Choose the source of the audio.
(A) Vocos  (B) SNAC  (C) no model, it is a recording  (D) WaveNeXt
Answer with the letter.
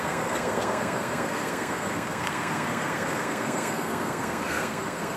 B